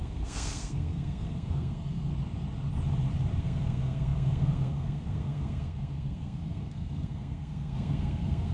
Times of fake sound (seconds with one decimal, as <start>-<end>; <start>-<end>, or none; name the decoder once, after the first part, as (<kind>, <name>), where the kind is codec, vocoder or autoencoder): 0.0-2.1 (codec, SNAC); 3.4-8.5